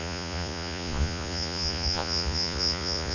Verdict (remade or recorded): remade